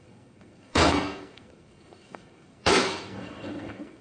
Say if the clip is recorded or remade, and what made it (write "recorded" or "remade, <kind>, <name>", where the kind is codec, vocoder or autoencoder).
remade, codec, SNAC